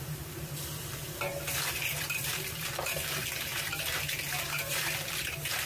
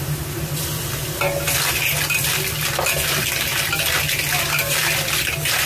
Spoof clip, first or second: first